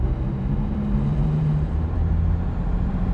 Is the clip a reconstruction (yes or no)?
yes